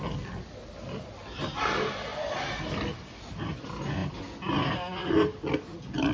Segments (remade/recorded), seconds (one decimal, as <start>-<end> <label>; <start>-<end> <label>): 0.0-6.1 recorded